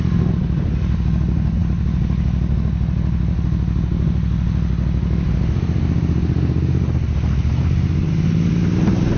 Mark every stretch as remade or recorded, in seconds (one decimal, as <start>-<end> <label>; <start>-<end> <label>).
0.0-9.2 recorded